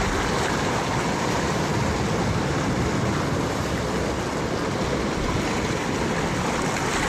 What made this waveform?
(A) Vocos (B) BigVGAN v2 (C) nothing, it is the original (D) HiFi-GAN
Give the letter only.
C